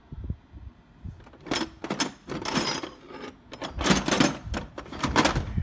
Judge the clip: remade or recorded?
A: recorded